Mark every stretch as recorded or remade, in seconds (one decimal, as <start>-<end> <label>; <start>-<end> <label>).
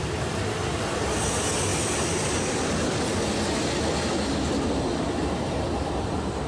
0.0-6.5 recorded